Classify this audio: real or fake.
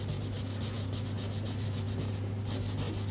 real